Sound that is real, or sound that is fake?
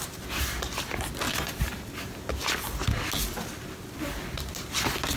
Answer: real